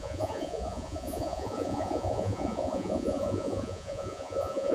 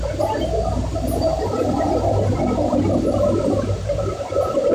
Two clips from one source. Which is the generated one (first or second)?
first